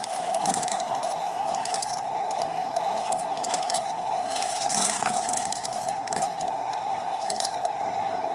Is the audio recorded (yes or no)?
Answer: no